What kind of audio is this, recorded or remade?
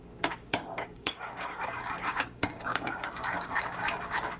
remade